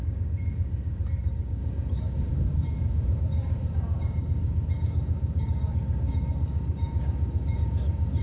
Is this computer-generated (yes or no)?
yes